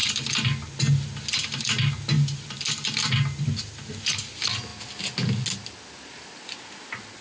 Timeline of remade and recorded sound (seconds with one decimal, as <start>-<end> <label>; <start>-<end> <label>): 0.0-7.2 recorded